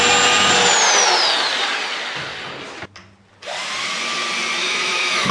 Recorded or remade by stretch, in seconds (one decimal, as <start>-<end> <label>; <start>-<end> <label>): 0.0-4.6 recorded; 4.6-5.3 remade